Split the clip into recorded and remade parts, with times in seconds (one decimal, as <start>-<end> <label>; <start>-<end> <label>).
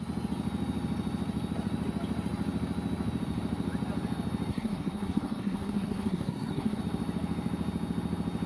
0.0-4.5 recorded; 4.5-6.8 remade; 6.8-8.5 recorded